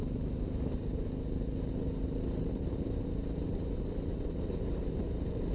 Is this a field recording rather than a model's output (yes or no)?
yes